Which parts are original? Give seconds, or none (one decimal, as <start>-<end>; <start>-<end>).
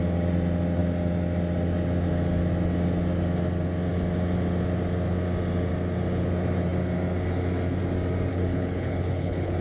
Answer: 0.0-8.3